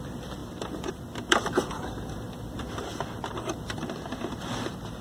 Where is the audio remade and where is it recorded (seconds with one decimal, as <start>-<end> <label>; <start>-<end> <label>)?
0.0-5.0 remade